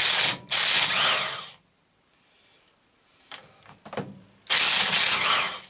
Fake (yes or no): no